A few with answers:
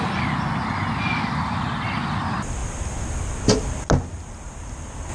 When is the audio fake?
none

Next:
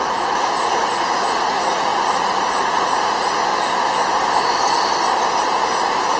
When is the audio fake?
0.0-3.5; 5.4-6.2

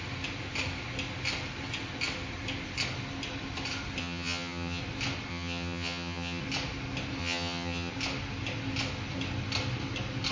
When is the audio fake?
4.0-4.8; 5.3-6.4; 7.2-7.9

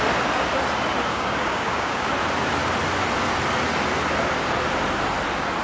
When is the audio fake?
1.1-2.1

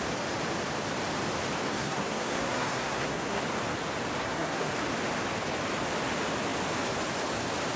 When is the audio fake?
1.7-3.4; 4.2-4.7

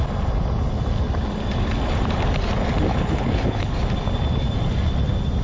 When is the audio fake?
2.9-3.7

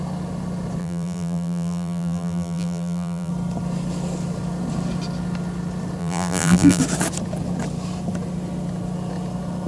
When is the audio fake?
0.8-3.3; 6.0-6.8